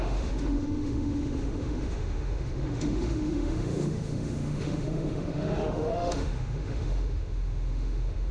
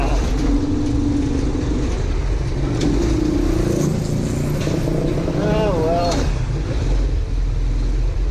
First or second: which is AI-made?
first